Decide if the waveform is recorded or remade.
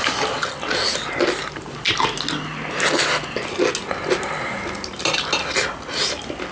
recorded